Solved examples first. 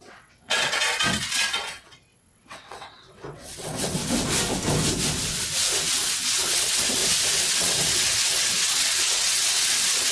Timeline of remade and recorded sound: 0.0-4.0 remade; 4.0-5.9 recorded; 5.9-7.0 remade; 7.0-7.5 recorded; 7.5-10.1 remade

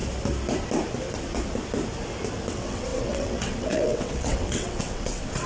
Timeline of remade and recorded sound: 0.0-2.5 recorded; 2.5-5.5 remade

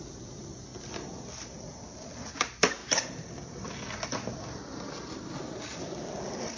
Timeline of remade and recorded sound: 0.0-6.6 recorded

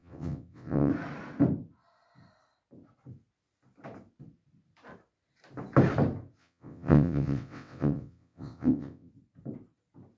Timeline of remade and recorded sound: 0.0-0.9 remade; 0.9-6.4 recorded; 6.4-9.1 remade; 9.1-10.2 recorded